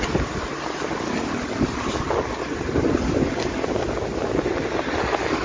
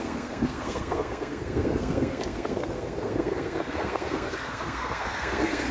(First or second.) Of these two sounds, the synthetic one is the second